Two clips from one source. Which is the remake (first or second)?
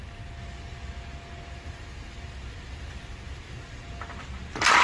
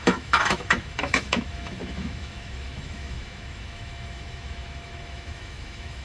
second